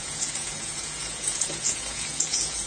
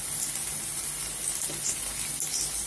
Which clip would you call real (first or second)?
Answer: second